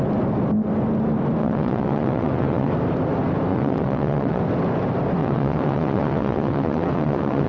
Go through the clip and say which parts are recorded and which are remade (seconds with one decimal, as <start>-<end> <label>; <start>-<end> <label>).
0.0-1.4 recorded; 1.4-2.7 remade; 2.7-3.5 recorded; 3.5-4.4 remade; 4.4-5.2 recorded; 5.2-7.5 remade